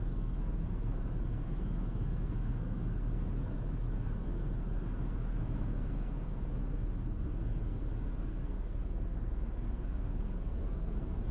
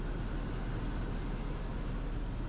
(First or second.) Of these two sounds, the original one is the second